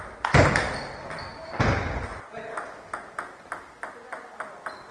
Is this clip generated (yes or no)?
no